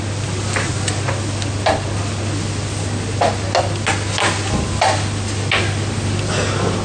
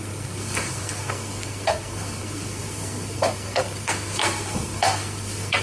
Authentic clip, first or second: first